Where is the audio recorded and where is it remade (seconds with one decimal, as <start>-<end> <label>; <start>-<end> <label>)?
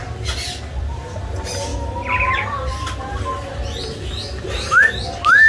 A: 0.0-5.5 recorded